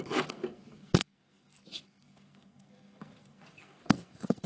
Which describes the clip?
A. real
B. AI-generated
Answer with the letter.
B